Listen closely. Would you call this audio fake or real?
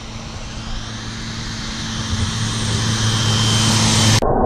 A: real